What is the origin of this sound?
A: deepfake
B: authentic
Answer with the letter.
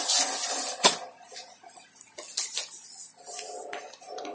B